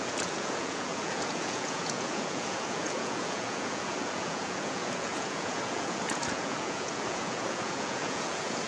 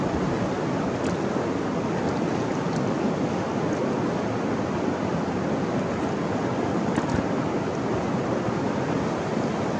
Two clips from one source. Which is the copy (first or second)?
first